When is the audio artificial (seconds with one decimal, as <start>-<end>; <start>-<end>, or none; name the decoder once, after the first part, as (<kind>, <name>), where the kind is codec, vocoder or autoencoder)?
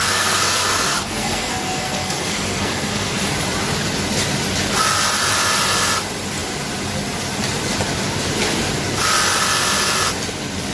0.0-3.3 (codec, SNAC)